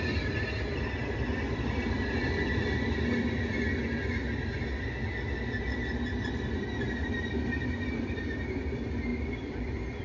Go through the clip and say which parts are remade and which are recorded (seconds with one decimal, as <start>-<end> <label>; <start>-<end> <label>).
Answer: 0.0-10.0 recorded